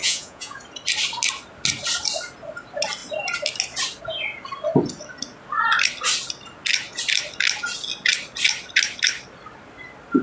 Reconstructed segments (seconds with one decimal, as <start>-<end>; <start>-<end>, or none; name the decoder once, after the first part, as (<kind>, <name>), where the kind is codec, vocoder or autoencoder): 0.0-0.6 (vocoder, Vocos)